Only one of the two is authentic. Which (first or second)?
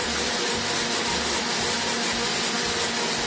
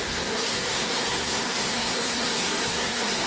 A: first